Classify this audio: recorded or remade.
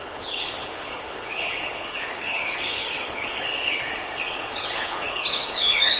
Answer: remade